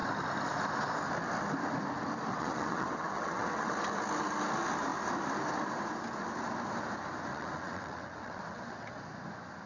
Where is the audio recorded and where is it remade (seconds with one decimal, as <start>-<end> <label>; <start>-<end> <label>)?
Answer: 0.0-2.3 recorded; 2.3-3.7 remade; 3.7-7.3 recorded; 7.3-9.0 remade; 9.0-9.7 recorded